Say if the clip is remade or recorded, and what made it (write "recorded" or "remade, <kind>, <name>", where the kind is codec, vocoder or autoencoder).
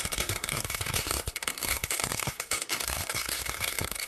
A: remade, codec, SNAC